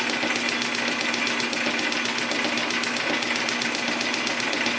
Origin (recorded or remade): recorded